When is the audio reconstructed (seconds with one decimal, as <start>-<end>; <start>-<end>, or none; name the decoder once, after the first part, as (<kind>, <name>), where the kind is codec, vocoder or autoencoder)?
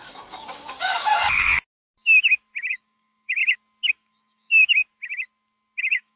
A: 0.0-1.5 (codec, DAC); 2.7-3.4; 3.9-4.8; 5.8-6.2